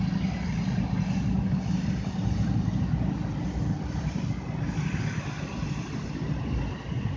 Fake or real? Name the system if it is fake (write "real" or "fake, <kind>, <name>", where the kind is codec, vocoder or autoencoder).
real